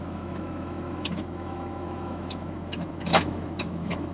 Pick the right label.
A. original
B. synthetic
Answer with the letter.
B